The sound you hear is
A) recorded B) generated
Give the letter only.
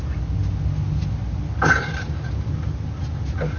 A